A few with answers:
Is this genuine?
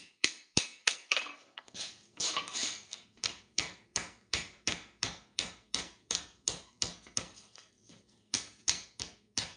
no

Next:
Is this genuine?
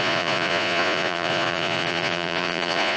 no